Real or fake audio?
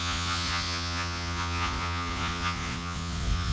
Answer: fake